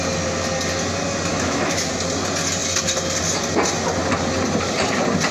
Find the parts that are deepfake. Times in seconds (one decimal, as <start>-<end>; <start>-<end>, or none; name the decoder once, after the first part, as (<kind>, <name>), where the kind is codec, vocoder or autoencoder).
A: 1.3-1.9 (autoencoder, DAC-VAE)